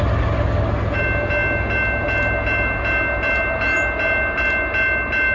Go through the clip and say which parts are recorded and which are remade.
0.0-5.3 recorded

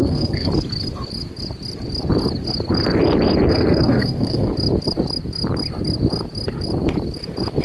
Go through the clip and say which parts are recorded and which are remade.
0.0-0.5 remade; 0.5-3.5 recorded; 3.5-4.5 remade; 4.5-7.6 recorded

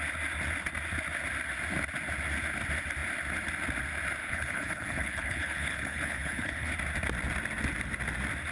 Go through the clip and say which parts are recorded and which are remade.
0.0-4.2 recorded; 4.2-6.7 remade; 6.7-8.5 recorded

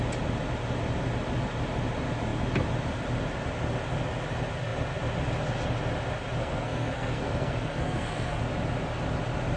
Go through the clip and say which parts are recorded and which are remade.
0.0-6.4 recorded; 6.4-8.4 remade; 8.4-9.6 recorded

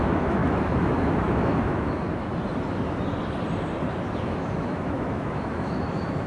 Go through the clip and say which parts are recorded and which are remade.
0.0-2.3 remade; 2.3-4.2 recorded; 4.2-6.3 remade